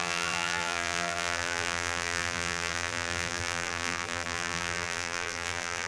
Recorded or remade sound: remade